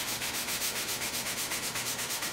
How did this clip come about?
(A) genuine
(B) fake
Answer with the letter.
B